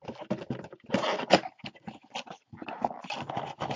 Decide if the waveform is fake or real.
real